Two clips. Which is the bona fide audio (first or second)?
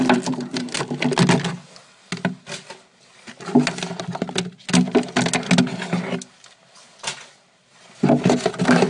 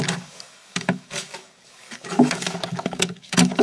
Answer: first